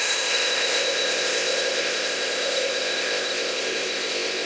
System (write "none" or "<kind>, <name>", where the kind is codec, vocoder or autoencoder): codec, ZipCodec